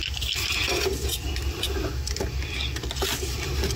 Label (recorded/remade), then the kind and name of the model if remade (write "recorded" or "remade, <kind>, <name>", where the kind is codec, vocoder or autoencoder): recorded